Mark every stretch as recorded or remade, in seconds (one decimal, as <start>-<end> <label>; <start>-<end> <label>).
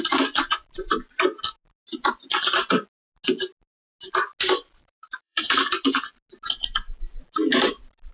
0.0-4.7 recorded; 4.7-5.8 remade; 5.8-8.1 recorded